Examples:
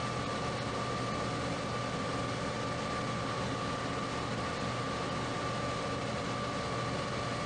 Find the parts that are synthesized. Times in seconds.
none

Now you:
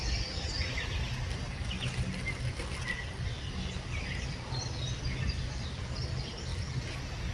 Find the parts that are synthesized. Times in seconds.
none

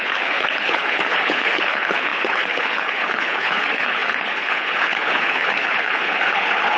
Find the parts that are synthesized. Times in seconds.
0.0-6.8 (codec, HILCodec)